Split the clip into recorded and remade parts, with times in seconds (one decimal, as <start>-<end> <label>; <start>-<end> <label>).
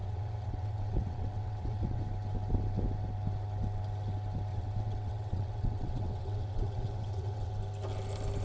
0.0-2.0 remade; 2.0-4.5 recorded; 4.5-7.5 remade; 7.5-8.4 recorded